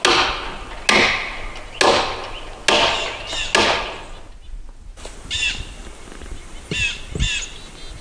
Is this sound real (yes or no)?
yes